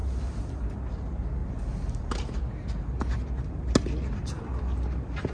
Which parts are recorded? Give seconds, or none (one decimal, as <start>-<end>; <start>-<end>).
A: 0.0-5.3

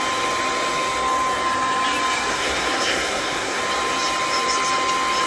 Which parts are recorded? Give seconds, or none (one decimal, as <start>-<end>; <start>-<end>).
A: 0.0-2.3; 3.6-5.3

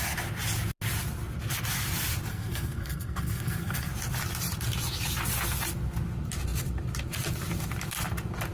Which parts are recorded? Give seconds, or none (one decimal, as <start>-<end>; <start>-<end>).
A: 0.0-2.3; 3.9-8.5

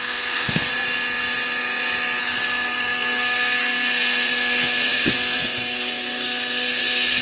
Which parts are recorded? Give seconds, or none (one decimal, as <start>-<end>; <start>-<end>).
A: 0.7-2.2